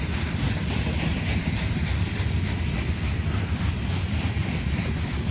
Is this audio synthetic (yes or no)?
yes